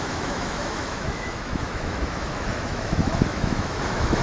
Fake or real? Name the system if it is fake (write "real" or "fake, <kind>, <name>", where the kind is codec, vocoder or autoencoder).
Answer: fake, autoencoder, DAC-VAE